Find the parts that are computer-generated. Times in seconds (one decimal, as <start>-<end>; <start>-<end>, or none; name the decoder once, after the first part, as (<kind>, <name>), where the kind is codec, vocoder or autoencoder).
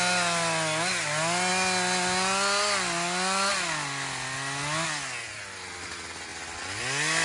none